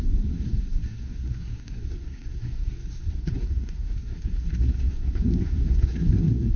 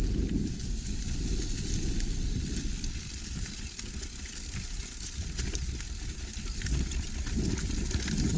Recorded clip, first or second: second